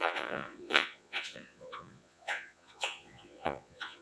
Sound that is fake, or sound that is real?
fake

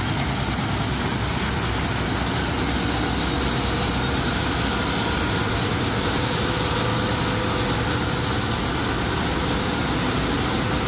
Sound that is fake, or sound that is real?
real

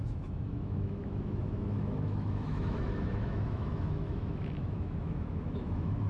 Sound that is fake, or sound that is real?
fake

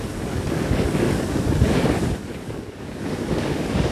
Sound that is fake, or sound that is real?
fake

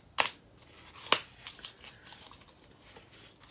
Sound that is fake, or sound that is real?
real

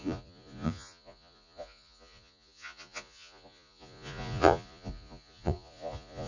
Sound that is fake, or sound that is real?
fake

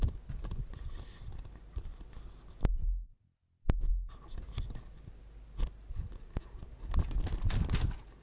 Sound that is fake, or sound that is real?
real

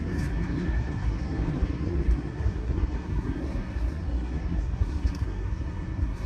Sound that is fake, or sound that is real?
fake